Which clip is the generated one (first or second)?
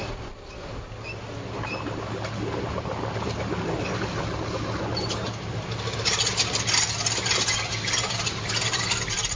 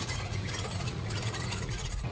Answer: second